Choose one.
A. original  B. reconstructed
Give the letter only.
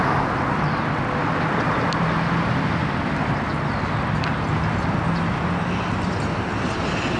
A